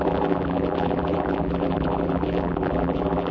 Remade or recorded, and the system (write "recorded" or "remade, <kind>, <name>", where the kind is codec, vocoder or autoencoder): remade, vocoder, BigVGAN v2